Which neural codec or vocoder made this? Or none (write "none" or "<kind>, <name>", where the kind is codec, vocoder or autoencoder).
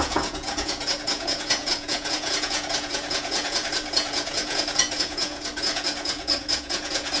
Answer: vocoder, Vocos